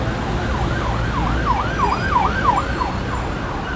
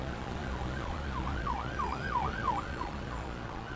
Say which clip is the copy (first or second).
second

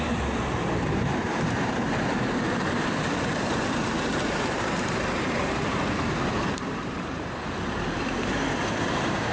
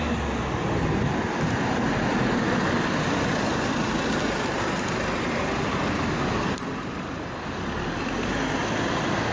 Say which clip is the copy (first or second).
first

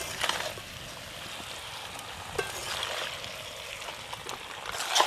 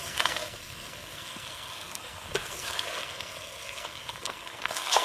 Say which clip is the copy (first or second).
second